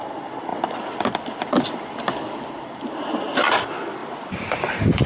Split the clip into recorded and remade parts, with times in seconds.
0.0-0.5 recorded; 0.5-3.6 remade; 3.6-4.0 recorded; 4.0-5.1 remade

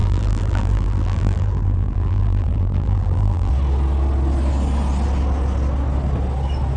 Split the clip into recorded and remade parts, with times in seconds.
0.0-3.5 remade; 3.5-6.8 recorded